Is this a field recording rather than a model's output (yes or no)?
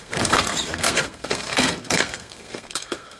no